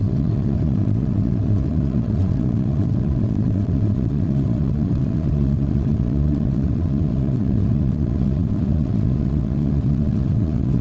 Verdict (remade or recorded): remade